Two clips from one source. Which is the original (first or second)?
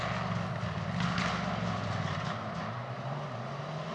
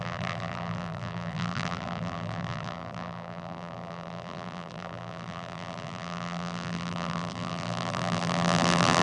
first